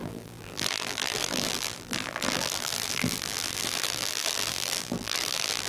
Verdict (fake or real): fake